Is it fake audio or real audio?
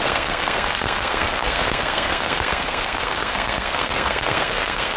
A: fake